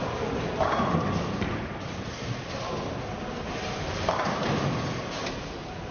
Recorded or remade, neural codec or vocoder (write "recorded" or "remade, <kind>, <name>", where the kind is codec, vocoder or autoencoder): recorded